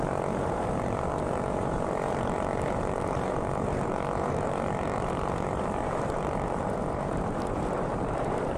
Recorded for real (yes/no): no